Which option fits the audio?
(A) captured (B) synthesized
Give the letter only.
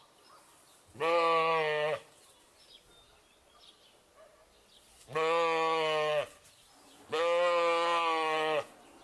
A